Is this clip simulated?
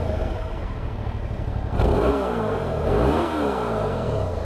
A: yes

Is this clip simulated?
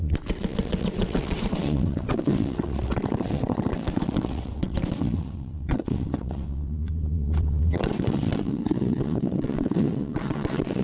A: yes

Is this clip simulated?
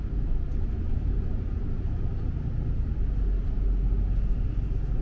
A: no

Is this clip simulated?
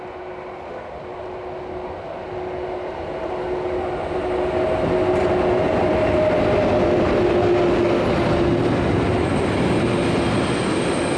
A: no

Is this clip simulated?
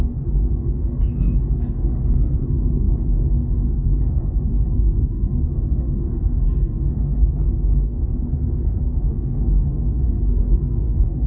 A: yes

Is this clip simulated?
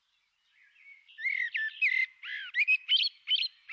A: no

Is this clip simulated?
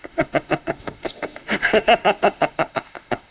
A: yes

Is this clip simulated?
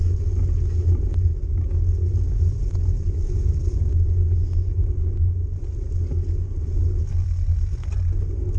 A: no